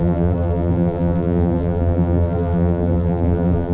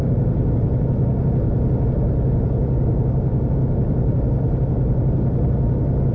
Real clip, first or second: second